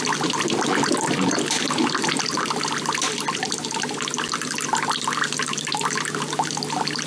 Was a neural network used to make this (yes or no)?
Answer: no